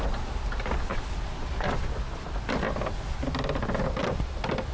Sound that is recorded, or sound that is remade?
recorded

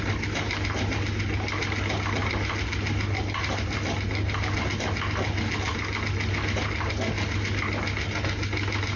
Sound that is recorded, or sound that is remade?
recorded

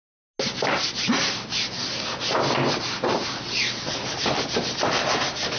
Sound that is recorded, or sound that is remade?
recorded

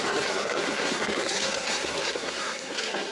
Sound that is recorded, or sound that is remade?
remade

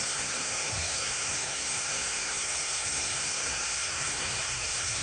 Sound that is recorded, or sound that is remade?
remade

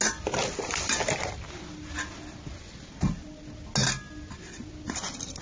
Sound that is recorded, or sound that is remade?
recorded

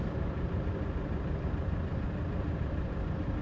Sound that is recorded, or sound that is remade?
recorded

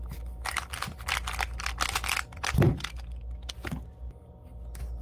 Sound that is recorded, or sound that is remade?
recorded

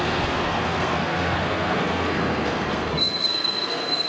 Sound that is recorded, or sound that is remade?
remade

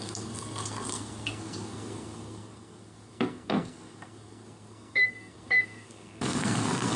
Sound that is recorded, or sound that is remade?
remade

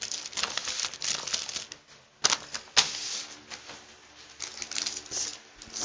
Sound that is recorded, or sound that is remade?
recorded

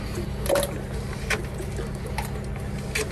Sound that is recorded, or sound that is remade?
recorded